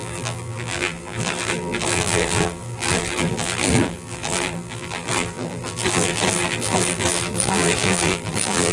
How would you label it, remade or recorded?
remade